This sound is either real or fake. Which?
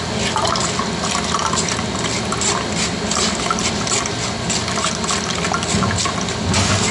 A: real